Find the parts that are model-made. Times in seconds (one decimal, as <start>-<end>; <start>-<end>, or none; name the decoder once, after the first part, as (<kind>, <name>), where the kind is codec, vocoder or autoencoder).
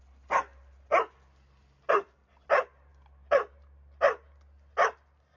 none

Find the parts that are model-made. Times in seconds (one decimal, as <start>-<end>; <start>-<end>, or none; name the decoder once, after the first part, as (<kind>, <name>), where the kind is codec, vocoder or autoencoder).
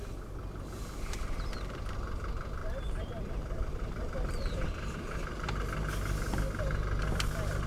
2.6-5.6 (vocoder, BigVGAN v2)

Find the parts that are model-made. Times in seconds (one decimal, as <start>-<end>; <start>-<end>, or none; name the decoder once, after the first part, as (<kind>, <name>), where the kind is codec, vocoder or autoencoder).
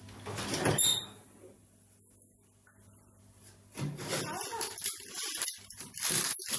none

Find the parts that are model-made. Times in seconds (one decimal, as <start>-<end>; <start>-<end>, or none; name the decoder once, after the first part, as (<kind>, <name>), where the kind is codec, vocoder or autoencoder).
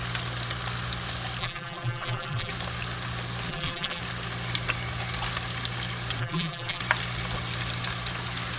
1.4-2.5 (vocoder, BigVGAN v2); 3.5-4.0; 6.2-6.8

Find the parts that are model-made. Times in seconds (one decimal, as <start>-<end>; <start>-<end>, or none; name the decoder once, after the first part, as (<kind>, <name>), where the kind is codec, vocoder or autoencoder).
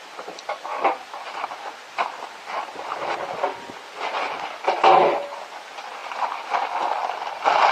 none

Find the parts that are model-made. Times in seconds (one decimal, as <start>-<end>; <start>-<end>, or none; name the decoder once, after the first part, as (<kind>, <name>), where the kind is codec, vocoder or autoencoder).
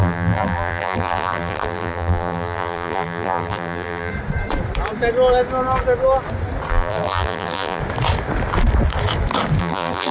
0.0-4.1 (vocoder, BigVGAN v2); 6.7-7.8; 9.6-10.1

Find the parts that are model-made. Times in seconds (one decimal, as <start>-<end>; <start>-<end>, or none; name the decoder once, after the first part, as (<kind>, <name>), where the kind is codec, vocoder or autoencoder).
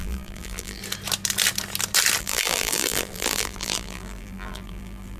0.0-0.8 (vocoder, BigVGAN v2); 2.2-5.2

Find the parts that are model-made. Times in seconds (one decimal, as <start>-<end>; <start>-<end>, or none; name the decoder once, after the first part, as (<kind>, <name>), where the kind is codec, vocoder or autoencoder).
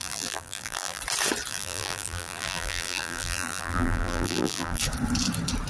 0.0-1.0 (vocoder, BigVGAN v2); 1.5-4.8